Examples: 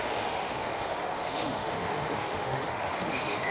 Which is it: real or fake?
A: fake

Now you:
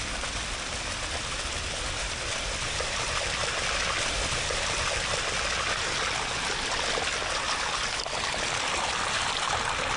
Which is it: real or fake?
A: real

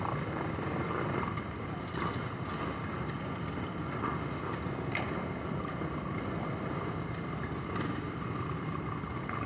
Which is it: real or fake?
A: real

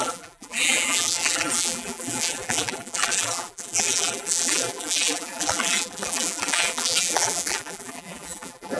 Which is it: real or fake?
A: fake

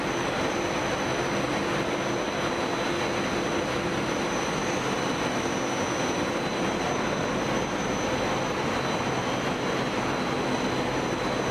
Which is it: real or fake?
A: real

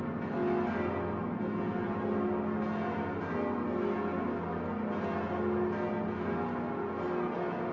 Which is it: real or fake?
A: real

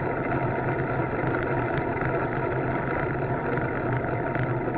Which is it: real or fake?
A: real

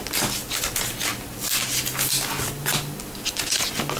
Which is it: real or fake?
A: real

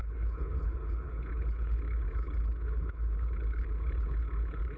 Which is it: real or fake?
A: fake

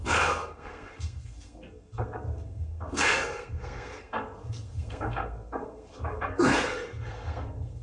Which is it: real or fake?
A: fake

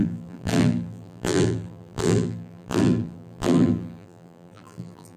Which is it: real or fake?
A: fake